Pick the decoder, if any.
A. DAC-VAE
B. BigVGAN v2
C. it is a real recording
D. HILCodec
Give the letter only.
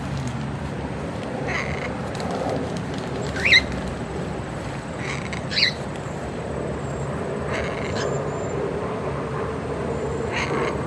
C